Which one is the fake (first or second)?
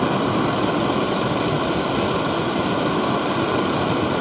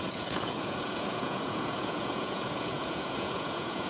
second